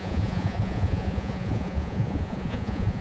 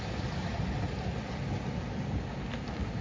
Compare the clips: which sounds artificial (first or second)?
first